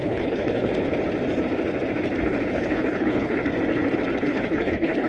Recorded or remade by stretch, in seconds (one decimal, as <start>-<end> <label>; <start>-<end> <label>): 0.0-0.7 remade; 0.7-2.2 recorded; 2.2-3.4 remade; 3.4-4.2 recorded; 4.2-5.1 remade